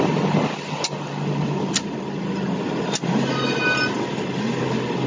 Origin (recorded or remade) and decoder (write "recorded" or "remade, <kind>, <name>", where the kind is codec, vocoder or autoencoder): recorded